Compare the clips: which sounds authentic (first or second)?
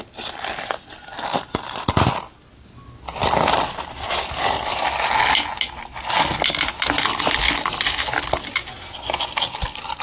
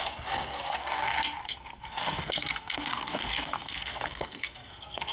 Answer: first